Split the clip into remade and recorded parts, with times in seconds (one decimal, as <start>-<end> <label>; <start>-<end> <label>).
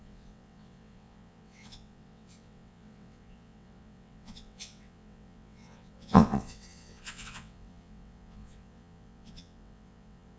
0.0-10.4 remade